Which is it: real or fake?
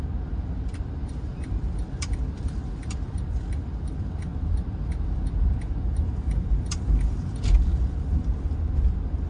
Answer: fake